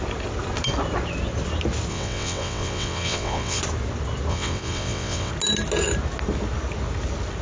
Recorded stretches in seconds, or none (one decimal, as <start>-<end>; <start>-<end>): 0.0-1.9; 3.6-4.3; 5.3-7.4